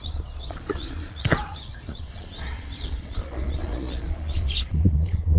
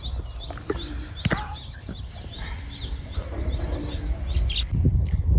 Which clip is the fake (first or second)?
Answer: first